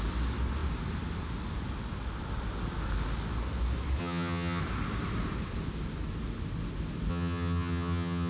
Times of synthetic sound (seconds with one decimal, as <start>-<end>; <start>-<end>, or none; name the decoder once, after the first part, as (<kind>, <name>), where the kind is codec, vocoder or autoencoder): 4.0-4.6 (vocoder, HiFi-GAN); 7.1-8.3